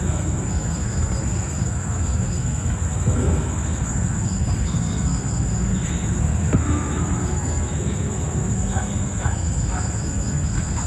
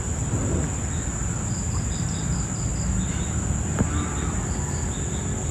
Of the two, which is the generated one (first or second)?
first